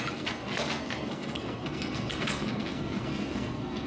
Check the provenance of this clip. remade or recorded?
remade